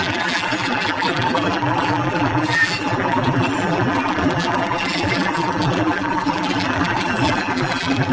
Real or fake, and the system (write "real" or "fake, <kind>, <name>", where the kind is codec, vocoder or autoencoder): fake, vocoder, BigVGAN v2